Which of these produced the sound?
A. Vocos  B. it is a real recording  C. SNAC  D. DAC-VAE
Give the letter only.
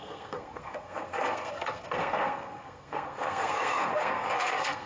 C